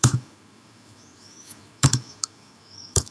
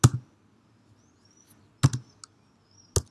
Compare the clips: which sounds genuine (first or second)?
second